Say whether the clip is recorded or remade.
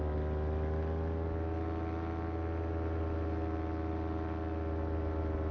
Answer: recorded